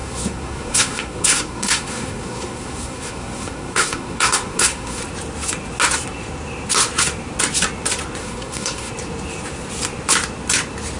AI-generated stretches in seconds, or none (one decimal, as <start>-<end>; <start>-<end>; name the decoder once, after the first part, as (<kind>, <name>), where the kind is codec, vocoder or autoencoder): 0.0-5.0 (codec, SNAC); 8.2-8.9